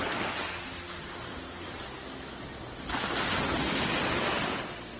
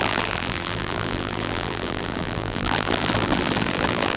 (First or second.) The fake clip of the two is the second